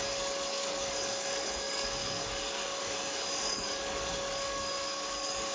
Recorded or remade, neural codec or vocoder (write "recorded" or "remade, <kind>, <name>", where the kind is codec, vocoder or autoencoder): remade, codec, DAC